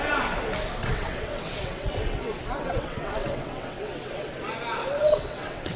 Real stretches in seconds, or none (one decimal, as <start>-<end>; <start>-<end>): 0.0-0.8; 4.3-4.8